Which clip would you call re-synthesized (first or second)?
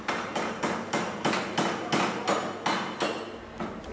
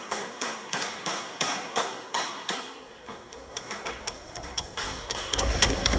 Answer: second